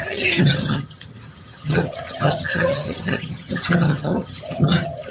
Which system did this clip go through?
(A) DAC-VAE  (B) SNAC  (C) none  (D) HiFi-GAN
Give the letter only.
D